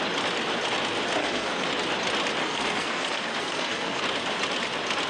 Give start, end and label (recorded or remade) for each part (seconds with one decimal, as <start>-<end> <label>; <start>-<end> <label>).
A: 0.0-1.2 recorded; 1.2-1.7 remade; 1.7-2.4 recorded; 2.4-4.0 remade; 4.0-5.1 recorded